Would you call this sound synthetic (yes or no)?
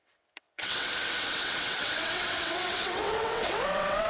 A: yes